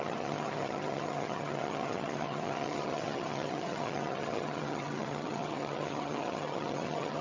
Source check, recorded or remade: remade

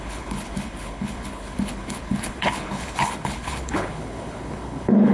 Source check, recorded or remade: remade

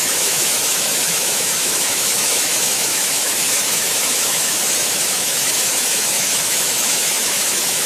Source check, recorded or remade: remade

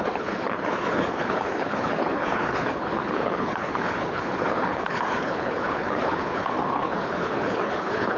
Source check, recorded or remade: remade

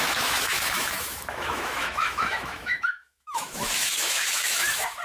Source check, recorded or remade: remade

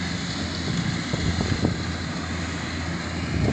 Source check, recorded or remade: recorded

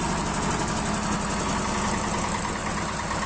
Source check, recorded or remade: recorded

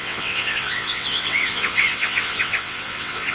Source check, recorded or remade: remade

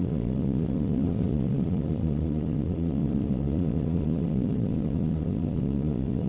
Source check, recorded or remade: remade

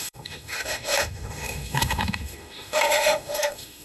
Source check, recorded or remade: remade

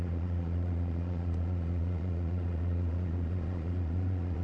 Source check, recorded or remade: remade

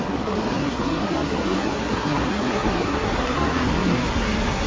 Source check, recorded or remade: remade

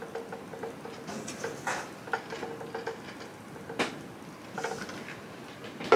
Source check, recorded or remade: recorded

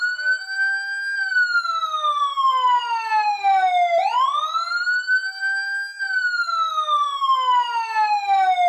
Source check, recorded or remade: recorded